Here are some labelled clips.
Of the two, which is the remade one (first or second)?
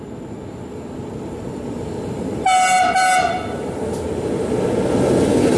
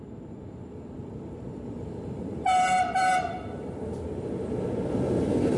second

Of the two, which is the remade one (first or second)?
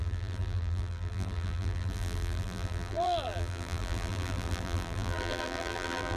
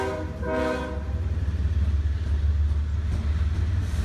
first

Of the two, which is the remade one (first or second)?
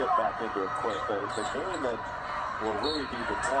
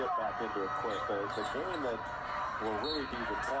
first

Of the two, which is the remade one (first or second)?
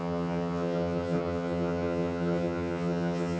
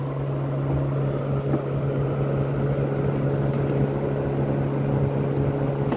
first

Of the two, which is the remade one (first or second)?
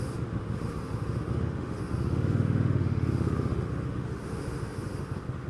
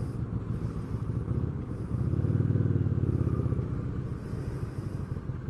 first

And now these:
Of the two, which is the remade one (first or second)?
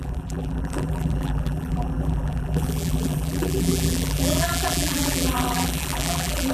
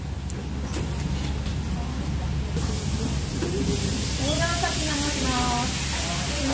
first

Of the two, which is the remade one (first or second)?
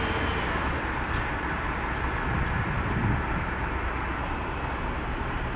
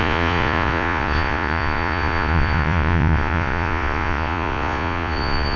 second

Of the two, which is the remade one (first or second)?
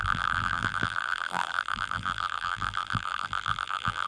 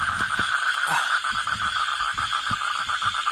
first